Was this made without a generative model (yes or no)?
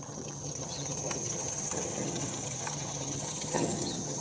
no